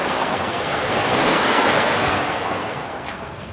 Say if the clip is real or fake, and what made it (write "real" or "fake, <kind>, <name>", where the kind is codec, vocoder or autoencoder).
fake, codec, SNAC